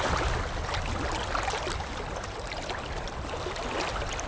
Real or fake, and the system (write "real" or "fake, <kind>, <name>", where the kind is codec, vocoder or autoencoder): real